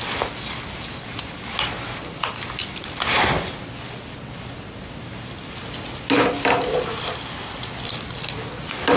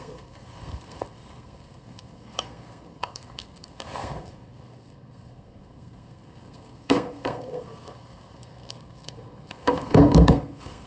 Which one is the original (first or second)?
first